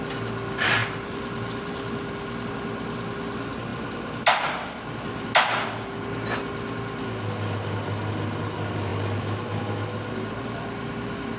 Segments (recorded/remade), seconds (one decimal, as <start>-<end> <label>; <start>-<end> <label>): 0.0-0.8 recorded; 0.8-2.5 remade; 2.5-8.9 recorded; 8.9-9.6 remade; 9.6-11.4 recorded